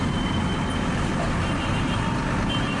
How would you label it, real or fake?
fake